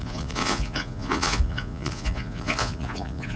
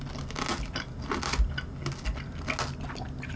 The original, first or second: second